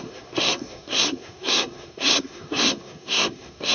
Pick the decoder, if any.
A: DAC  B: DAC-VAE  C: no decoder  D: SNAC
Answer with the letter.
D